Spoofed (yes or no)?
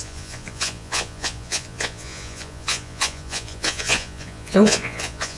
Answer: yes